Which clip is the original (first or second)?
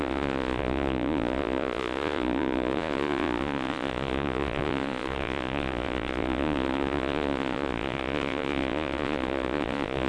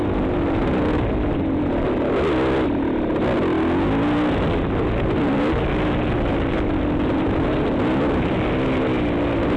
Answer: second